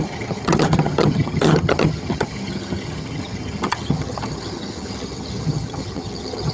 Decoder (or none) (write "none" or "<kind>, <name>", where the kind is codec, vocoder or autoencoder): vocoder, HiFi-GAN